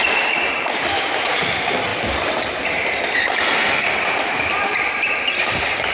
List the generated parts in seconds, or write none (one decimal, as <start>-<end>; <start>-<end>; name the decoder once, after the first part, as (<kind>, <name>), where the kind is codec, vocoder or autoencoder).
0.0-1.9 (vocoder, BigVGAN v2); 4.2-5.9